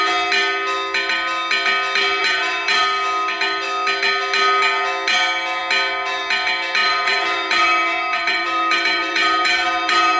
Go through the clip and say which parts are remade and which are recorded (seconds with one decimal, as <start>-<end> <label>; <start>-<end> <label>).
0.0-2.2 recorded; 2.2-2.8 remade; 2.8-6.8 recorded; 6.8-10.2 remade